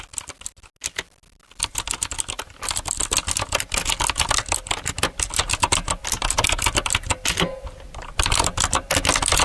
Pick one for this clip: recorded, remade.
recorded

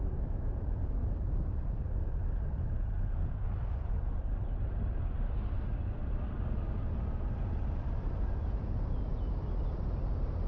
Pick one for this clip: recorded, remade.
recorded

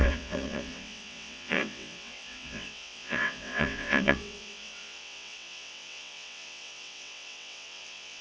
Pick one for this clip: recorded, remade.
remade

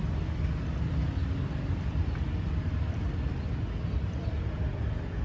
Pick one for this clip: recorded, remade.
recorded